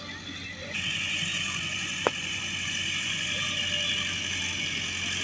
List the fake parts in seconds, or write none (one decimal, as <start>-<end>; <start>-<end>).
0.6-3.6